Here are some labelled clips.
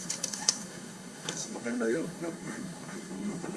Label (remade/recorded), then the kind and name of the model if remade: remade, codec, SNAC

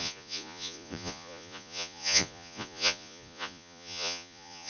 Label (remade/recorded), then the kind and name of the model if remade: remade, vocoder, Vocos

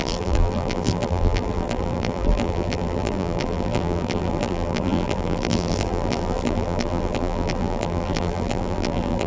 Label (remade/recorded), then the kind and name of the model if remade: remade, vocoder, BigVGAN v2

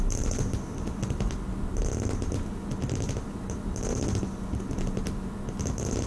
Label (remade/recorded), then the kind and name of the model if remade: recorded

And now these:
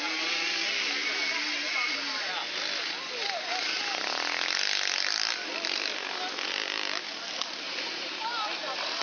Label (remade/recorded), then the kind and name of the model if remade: recorded